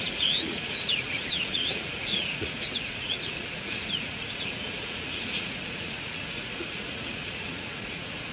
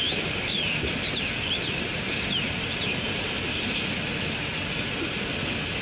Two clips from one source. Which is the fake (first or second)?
first